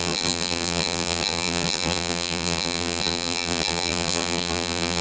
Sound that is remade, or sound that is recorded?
remade